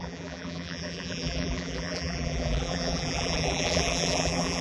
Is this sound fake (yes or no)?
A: yes